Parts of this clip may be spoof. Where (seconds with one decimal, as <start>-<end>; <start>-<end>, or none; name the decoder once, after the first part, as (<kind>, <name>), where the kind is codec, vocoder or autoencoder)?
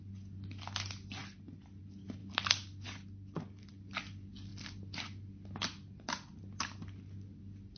none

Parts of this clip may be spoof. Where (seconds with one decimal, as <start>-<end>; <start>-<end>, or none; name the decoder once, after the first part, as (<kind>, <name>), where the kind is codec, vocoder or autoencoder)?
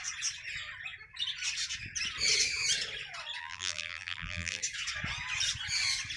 3.4-4.6 (vocoder, BigVGAN v2)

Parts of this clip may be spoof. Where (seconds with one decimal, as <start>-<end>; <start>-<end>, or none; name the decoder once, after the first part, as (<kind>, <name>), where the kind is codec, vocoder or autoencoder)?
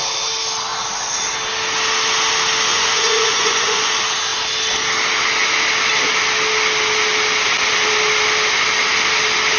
2.7-3.9 (vocoder, Vocos)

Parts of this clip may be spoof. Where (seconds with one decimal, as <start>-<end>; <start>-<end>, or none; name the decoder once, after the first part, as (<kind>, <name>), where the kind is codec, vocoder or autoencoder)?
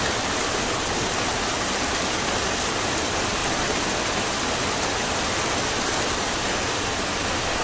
none